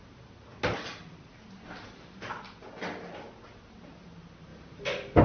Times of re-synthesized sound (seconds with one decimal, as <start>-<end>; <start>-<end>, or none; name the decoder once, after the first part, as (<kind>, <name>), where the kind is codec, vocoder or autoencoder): none